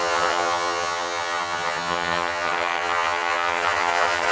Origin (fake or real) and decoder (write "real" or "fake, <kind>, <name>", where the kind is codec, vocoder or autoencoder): fake, vocoder, HiFi-GAN